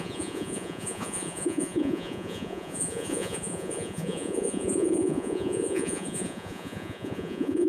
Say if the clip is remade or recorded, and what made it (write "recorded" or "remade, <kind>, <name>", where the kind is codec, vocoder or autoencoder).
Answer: remade, vocoder, Vocos